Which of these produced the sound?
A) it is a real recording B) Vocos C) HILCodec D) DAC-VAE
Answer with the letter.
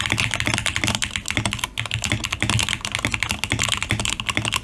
A